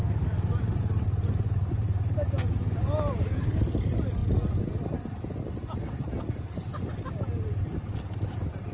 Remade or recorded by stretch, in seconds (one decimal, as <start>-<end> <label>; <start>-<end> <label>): 0.0-0.6 recorded; 0.6-4.2 remade; 4.2-5.6 recorded; 5.6-6.7 remade; 6.7-8.0 recorded; 8.0-8.7 remade

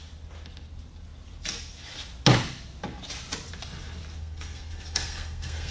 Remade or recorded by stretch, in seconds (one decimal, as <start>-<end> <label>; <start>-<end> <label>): 0.0-4.2 recorded; 4.2-5.7 remade

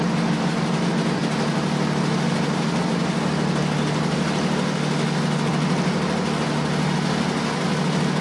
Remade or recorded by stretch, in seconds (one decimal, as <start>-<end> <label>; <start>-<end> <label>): 0.0-8.2 recorded

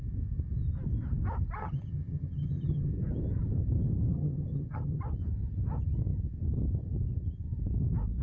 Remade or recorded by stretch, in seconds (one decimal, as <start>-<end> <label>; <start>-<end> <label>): 0.0-1.6 recorded; 1.6-2.9 remade; 2.9-4.1 recorded; 4.1-5.0 remade; 5.0-8.2 recorded

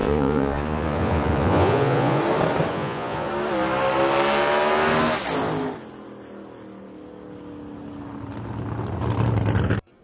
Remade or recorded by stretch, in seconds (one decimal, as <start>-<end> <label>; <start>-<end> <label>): 0.0-2.2 remade; 2.2-2.7 recorded; 2.7-3.3 remade; 3.3-10.0 recorded